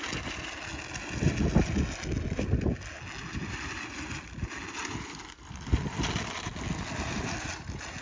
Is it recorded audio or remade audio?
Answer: recorded